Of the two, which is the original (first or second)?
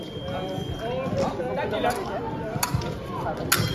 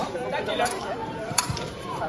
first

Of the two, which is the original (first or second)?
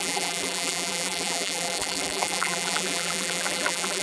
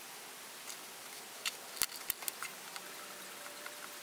second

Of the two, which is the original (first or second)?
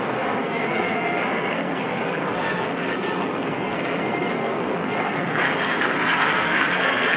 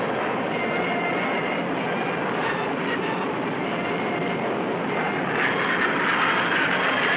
second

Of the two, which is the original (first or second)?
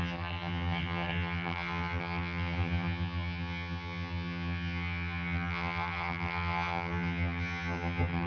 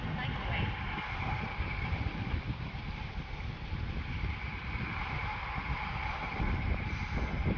second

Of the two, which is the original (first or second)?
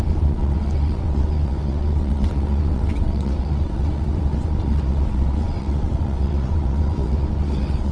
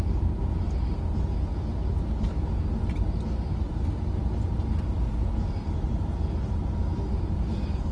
second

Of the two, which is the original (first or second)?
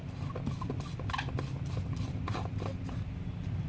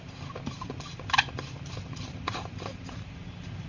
first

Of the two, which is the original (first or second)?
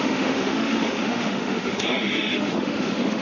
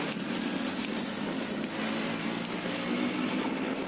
second